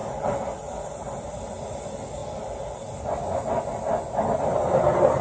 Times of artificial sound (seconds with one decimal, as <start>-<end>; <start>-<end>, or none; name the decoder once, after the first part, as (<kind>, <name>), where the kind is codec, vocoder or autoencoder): none